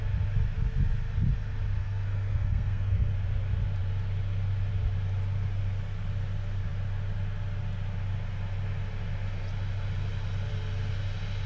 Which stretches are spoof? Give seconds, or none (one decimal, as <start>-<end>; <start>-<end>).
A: 1.8-3.1